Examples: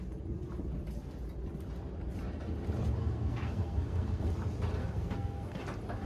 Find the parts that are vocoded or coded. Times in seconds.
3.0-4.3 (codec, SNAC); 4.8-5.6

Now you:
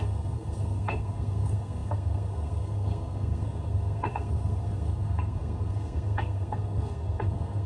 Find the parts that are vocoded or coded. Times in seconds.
0.0-7.7 (codec, SNAC)

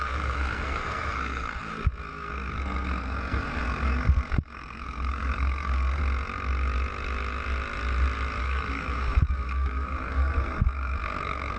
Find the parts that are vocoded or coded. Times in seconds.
0.0-6.0 (codec, SNAC); 8.4-11.6

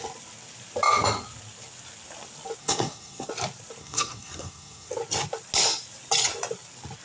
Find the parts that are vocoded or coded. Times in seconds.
2.6-3.3 (codec, SNAC); 3.8-4.9